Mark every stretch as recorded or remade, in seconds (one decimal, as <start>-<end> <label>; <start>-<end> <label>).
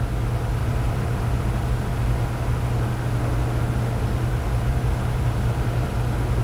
0.0-0.6 recorded; 0.6-1.2 remade; 1.2-4.3 recorded; 4.3-5.9 remade; 5.9-6.4 recorded